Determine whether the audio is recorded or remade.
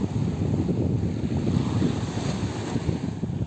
recorded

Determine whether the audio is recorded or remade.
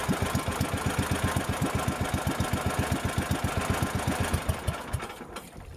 recorded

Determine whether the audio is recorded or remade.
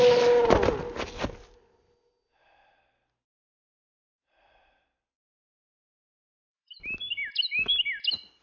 recorded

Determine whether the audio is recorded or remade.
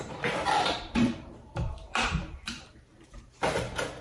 remade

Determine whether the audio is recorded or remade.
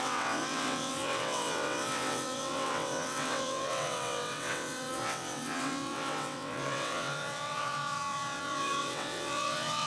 remade